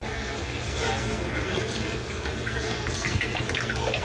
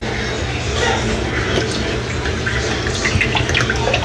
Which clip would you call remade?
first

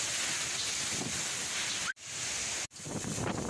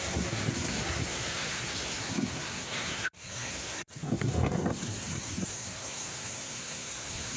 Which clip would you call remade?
second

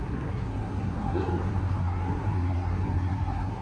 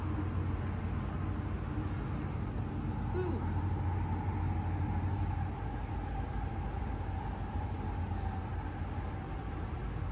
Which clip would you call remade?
first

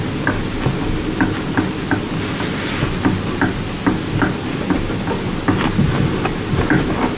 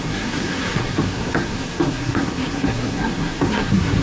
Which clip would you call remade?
second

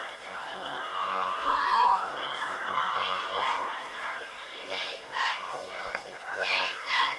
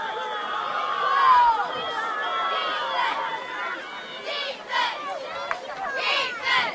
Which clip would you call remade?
first